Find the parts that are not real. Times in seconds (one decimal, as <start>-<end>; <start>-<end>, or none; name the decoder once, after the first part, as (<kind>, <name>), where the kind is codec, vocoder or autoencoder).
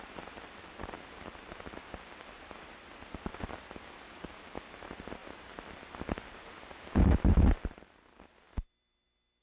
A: none